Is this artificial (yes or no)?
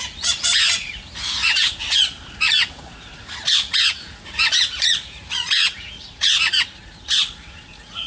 yes